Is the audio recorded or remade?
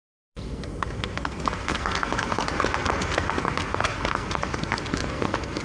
remade